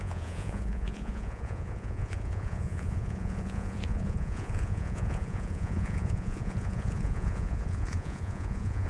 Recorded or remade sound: remade